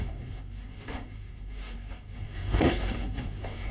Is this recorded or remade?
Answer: remade